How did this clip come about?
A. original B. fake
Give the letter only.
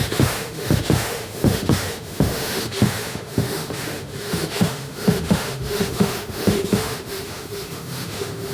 B